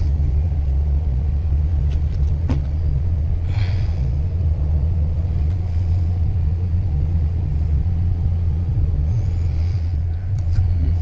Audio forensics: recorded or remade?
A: remade